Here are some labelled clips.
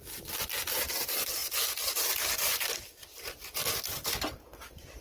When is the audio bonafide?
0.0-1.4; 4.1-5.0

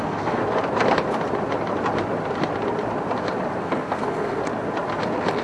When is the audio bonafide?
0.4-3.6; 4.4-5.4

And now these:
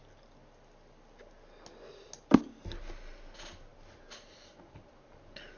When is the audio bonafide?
0.0-5.6

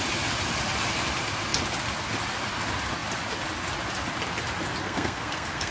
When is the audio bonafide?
0.0-4.8

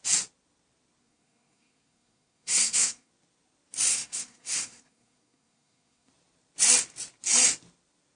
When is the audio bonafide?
0.0-1.0; 3.1-3.9; 6.1-8.2

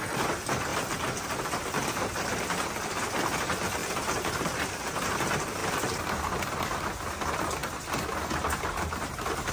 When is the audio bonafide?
0.0-3.8; 4.6-9.5

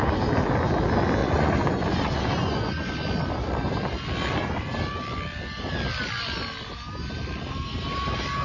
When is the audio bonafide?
0.0-1.2; 2.9-8.4

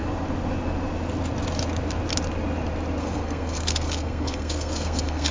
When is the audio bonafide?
0.0-3.0